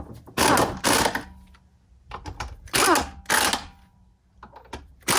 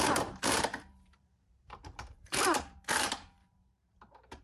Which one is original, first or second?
first